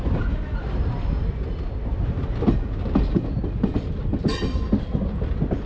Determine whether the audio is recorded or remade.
recorded